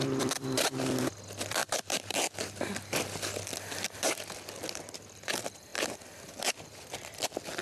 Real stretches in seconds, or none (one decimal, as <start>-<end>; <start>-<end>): 5.7-6.4